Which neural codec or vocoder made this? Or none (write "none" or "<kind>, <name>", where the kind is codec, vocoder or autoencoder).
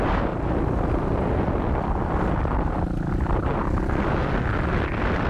none